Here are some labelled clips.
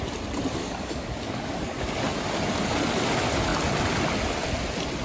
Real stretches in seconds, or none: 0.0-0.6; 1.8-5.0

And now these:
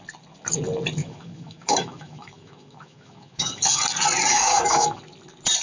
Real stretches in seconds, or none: 0.0-1.0; 3.6-4.3; 5.0-5.6